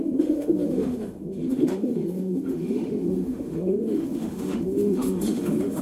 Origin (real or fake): fake